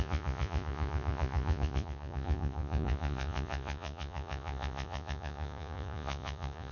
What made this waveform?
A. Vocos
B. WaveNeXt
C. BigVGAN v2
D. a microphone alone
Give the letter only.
A